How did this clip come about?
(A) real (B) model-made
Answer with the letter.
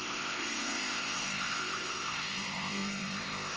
B